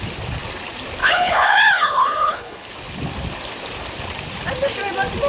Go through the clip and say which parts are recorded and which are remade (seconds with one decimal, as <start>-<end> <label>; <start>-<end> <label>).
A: 0.0-1.0 recorded; 1.0-2.7 remade; 2.7-5.3 recorded